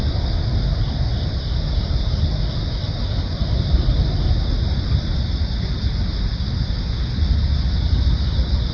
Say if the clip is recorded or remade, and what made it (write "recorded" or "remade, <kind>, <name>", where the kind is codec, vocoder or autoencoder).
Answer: recorded